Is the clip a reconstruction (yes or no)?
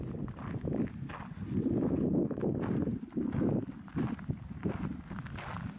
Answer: no